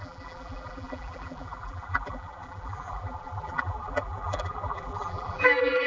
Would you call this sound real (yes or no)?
no